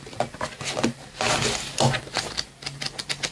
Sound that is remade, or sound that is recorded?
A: recorded